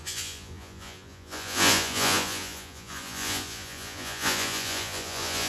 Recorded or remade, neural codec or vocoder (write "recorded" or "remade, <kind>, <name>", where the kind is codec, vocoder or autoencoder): remade, vocoder, Vocos